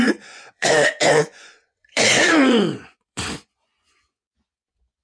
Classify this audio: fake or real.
fake